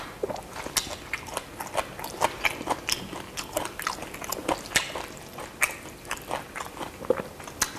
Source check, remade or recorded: recorded